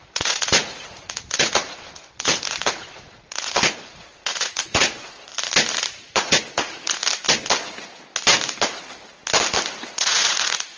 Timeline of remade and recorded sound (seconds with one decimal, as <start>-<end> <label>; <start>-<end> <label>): 0.0-5.3 remade; 5.3-6.1 recorded; 6.1-7.0 remade; 7.0-9.9 recorded; 9.9-10.8 remade